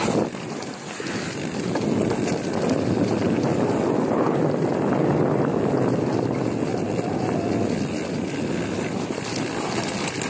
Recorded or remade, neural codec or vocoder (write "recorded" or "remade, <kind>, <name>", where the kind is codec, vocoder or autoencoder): recorded